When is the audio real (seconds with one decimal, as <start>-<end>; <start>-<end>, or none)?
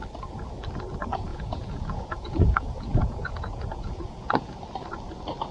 0.0-1.3; 4.6-5.5